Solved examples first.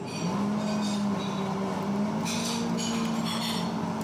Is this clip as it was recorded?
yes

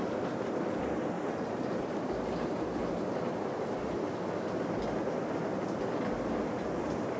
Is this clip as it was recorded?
yes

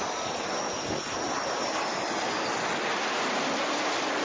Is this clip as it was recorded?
yes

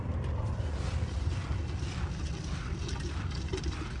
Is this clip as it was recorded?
yes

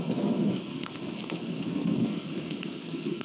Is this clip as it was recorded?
no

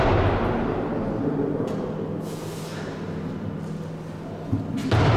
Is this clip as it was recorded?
yes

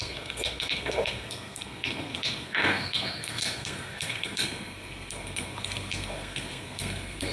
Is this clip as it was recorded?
no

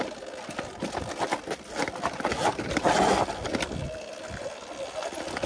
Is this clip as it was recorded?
yes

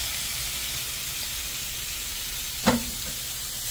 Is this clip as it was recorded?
yes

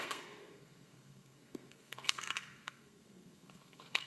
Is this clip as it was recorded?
no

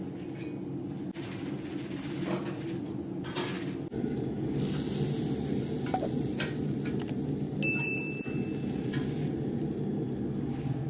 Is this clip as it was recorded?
yes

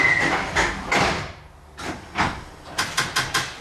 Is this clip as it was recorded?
yes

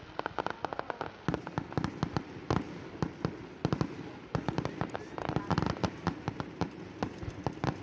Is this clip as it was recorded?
yes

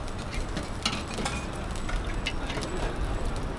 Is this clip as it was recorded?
yes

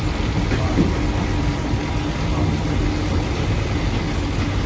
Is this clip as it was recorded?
yes